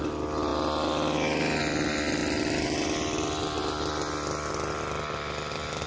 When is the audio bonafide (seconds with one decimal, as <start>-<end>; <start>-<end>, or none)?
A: 0.0-5.9